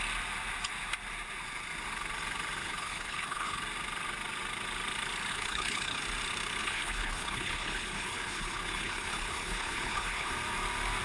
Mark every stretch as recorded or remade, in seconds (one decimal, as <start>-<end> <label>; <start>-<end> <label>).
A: 0.0-2.6 recorded; 2.6-3.6 remade; 3.6-5.3 recorded; 5.3-6.0 remade; 6.0-6.6 recorded; 6.6-10.3 remade; 10.3-11.0 recorded